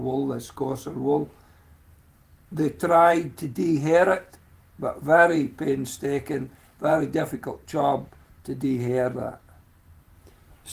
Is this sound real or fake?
fake